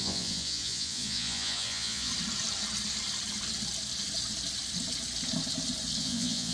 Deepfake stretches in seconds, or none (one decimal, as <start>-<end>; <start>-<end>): 0.0-2.1; 6.0-6.5